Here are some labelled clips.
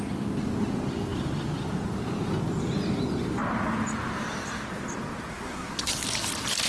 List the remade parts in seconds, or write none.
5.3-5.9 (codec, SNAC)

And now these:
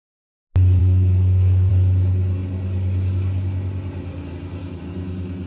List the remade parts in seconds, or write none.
0.8-1.7 (codec, SNAC)

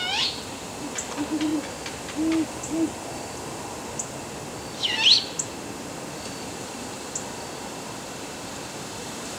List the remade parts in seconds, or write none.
0.0-1.5 (vocoder, BigVGAN v2); 6.1-9.4

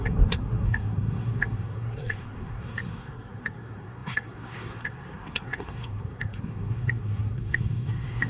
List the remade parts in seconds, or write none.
0.0-8.3 (codec, SNAC)